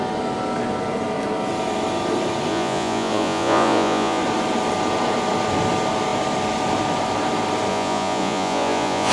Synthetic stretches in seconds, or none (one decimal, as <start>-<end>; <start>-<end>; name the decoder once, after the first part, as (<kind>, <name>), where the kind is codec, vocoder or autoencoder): 2.5-4.2 (vocoder, Vocos); 7.7-9.1